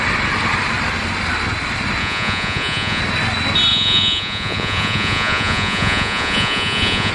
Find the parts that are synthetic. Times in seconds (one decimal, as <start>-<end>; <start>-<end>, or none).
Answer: 2.0-3.0; 3.7-7.1